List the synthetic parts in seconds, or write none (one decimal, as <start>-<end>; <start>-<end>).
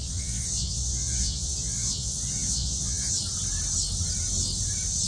0.0-3.1